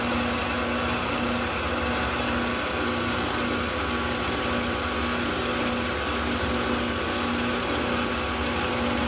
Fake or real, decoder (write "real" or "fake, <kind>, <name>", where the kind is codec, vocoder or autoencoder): real